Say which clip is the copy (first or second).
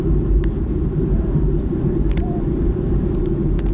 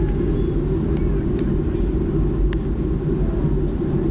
first